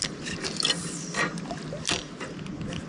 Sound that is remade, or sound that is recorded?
recorded